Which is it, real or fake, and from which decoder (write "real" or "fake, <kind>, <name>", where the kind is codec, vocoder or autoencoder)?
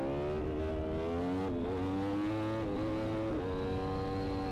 real